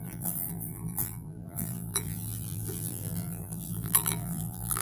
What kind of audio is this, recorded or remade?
remade